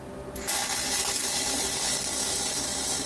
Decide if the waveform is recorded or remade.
recorded